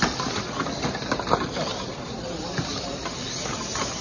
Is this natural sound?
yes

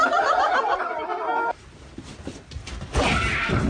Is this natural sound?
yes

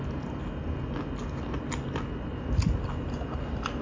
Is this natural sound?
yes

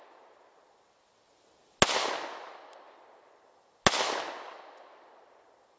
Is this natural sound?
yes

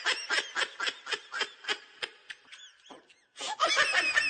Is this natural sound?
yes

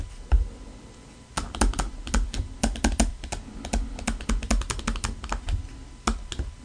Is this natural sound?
yes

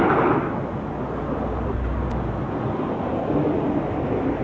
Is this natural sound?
yes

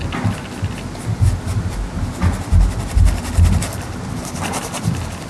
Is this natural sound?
yes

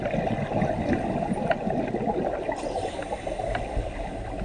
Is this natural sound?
yes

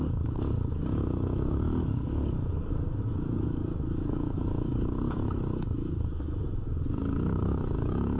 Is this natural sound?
no